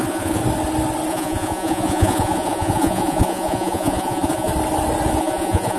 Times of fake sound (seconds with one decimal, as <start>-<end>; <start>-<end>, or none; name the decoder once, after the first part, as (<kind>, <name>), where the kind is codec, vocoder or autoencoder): 0.0-0.4 (vocoder, Vocos); 1.1-4.5; 5.2-5.8